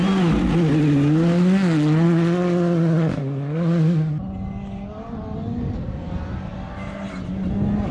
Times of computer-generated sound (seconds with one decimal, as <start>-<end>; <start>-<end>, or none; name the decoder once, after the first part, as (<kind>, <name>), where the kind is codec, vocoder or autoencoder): none